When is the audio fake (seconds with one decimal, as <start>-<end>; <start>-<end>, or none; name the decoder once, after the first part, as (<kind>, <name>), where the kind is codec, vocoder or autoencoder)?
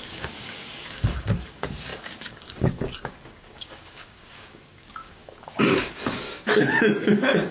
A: 0.0-7.5 (codec, DAC)